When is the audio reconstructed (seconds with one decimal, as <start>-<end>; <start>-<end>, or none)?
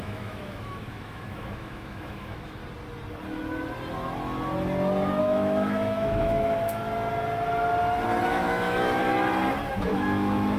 0.0-2.6; 5.2-6.8; 8.3-9.0; 9.7-10.6